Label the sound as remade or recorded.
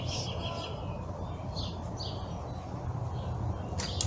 recorded